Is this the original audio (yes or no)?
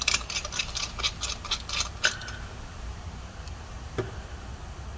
yes